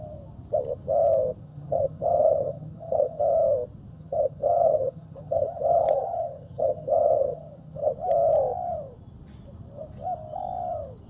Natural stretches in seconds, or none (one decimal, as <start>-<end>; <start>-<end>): 0.0-1.4; 3.2-3.9; 7.9-11.1